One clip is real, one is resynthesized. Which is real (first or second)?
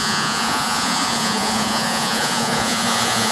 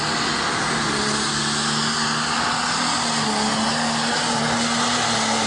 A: second